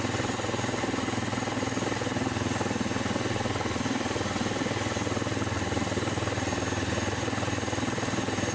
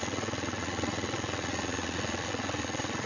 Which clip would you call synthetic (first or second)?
second